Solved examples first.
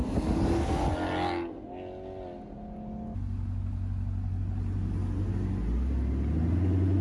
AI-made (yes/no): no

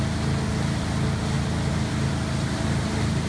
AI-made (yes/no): no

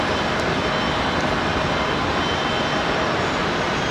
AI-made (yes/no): no